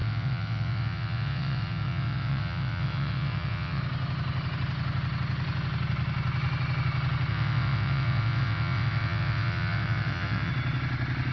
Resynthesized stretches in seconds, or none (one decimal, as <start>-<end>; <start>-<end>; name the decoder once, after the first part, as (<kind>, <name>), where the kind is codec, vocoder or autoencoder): 0.0-3.8 (vocoder, WaveNeXt); 7.3-10.5